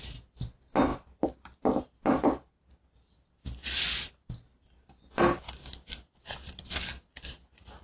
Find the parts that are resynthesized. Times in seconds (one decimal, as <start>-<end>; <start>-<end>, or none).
none